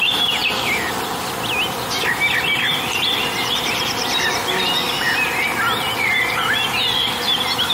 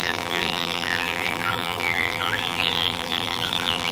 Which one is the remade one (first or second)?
second